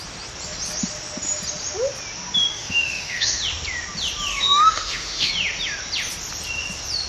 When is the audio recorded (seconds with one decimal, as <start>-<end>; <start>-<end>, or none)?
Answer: 0.0-2.5; 3.4-4.3; 5.3-7.1